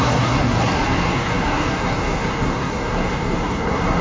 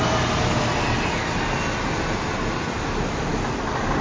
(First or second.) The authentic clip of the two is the second